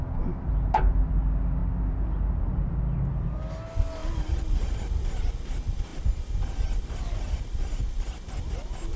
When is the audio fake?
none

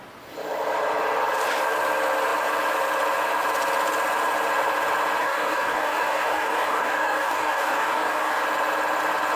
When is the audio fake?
5.2-8.4 (codec, DAC)

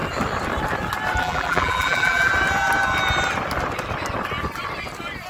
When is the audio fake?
1.2-2.3 (vocoder, BigVGAN v2)

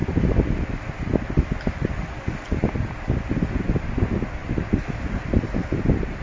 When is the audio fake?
none